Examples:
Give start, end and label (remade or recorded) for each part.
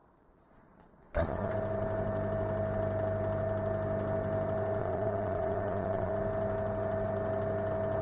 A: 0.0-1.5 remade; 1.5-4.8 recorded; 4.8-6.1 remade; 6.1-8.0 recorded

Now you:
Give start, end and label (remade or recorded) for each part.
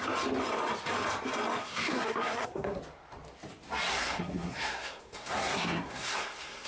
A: 0.0-1.6 recorded; 1.6-2.8 remade; 2.8-3.9 recorded; 3.9-6.7 remade